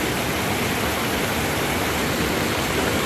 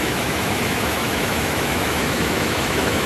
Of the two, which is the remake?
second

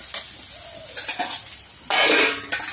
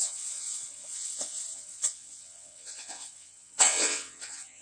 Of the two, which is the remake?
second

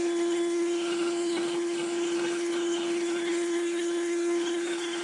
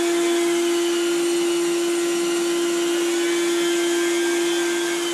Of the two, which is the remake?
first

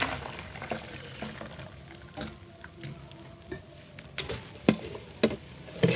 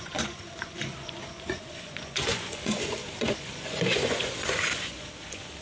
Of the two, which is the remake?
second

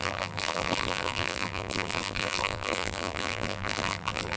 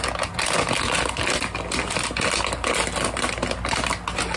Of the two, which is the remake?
first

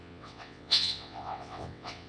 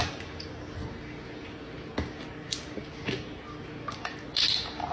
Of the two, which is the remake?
first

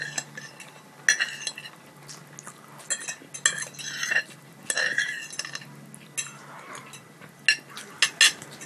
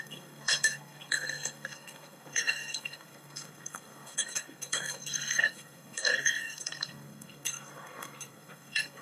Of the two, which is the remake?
second